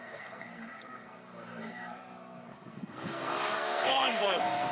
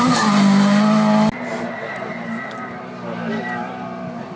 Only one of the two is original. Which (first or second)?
second